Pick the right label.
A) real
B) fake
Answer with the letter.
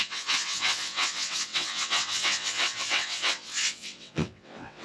B